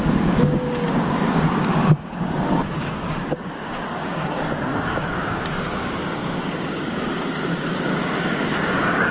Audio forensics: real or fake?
fake